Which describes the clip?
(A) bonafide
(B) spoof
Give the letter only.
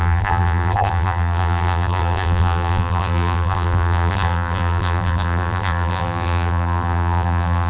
B